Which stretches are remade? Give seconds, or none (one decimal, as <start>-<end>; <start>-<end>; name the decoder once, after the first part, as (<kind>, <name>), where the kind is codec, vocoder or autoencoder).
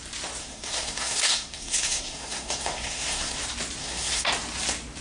0.4-3.4 (codec, SNAC); 3.8-4.3